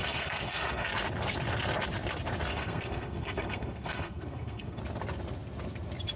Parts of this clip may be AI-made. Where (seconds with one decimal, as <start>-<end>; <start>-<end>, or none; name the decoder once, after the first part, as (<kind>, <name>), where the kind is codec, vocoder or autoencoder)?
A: 0.0-0.9 (codec, SNAC); 2.5-4.8